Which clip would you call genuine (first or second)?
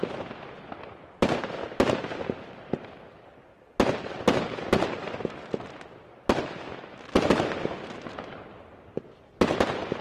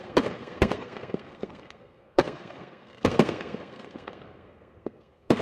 first